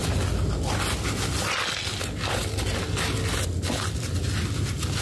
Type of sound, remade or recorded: recorded